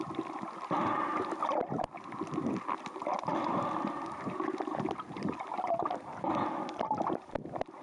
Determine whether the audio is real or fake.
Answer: real